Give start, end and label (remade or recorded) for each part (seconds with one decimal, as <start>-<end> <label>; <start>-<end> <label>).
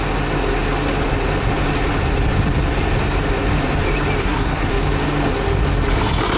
0.0-4.2 recorded; 4.2-4.7 remade; 4.7-6.4 recorded